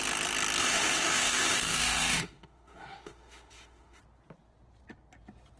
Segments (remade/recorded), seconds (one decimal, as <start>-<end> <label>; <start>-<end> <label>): 0.0-0.6 recorded; 0.6-4.0 remade; 4.0-5.6 recorded